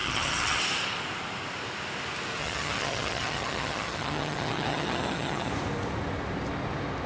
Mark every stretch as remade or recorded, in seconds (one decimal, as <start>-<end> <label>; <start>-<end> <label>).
0.0-0.6 remade; 0.6-2.4 recorded; 2.4-5.5 remade; 5.5-7.1 recorded